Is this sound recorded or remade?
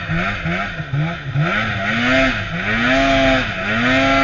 recorded